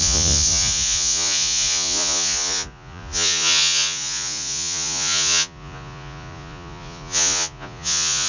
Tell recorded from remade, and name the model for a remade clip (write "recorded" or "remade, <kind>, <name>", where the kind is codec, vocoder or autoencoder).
remade, vocoder, Vocos